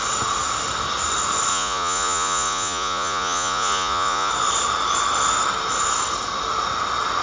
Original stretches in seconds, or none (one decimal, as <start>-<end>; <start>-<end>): 0.0-1.5; 4.3-7.2